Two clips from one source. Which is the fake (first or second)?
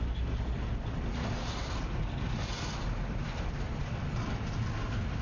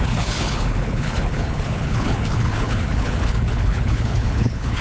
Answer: second